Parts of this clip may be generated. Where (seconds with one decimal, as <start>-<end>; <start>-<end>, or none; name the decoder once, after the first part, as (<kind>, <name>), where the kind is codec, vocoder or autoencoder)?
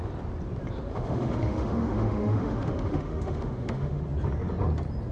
0.9-4.0 (autoencoder, DAC-VAE)